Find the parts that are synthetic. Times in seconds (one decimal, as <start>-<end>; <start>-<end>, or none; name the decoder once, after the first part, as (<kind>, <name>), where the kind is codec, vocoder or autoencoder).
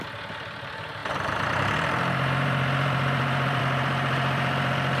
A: 0.0-5.0 (vocoder, BigVGAN v2)